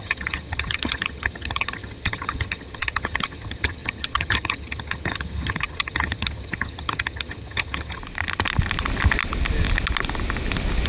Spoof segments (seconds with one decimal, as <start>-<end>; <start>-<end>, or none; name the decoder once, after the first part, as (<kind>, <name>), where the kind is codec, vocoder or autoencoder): 0.0-8.0 (vocoder, HiFi-GAN)